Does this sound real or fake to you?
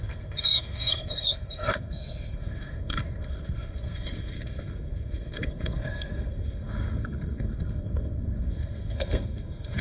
fake